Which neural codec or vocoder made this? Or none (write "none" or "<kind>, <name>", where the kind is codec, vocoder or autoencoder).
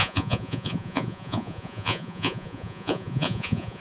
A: vocoder, Vocos